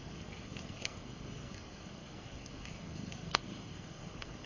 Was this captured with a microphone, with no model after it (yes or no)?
no